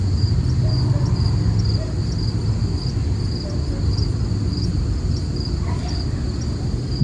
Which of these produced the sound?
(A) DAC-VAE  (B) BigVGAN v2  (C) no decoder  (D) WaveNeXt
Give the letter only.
C